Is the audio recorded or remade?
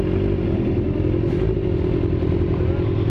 recorded